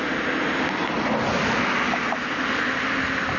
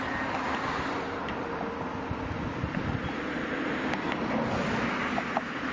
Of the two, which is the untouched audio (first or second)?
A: first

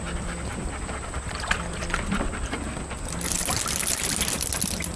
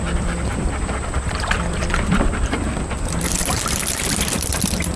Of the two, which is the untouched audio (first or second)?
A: first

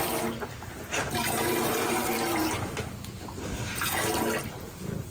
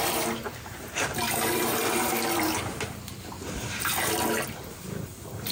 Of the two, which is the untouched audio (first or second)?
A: first